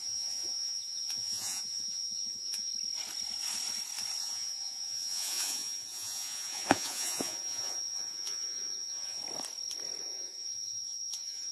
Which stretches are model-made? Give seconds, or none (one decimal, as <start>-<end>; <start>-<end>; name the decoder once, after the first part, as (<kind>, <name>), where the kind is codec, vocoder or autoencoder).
0.0-2.7 (vocoder, Vocos); 4.2-9.2; 10.0-11.5